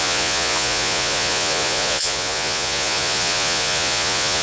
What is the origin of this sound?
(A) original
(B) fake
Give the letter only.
B